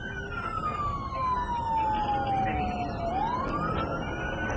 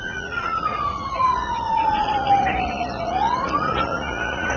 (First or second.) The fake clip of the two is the second